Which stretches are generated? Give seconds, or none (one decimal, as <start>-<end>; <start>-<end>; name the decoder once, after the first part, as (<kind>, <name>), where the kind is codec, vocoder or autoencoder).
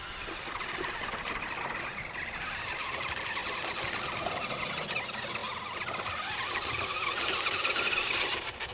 none